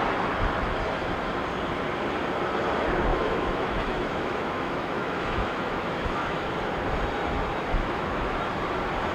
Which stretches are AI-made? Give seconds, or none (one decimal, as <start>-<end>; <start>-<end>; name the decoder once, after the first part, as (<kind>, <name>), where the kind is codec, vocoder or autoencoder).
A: 3.1-6.5 (autoencoder, DAC-VAE); 7.7-8.4